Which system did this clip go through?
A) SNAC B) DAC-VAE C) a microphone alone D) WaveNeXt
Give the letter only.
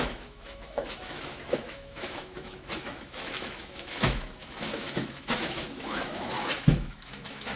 B